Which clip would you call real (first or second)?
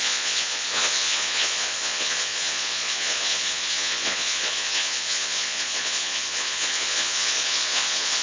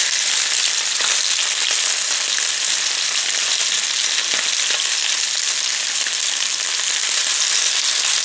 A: second